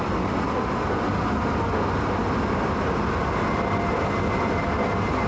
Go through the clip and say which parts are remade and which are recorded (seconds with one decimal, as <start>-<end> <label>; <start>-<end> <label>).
0.0-5.3 recorded